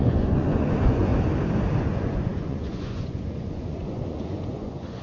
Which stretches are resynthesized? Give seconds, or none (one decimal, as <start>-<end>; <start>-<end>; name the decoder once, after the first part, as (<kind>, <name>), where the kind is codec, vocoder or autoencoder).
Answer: 0.0-1.1 (vocoder, Vocos); 1.8-5.0